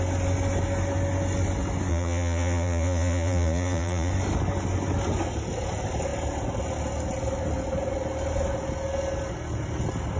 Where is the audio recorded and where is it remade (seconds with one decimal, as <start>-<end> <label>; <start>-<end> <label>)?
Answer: 0.0-1.9 recorded; 1.9-4.1 remade; 4.1-10.2 recorded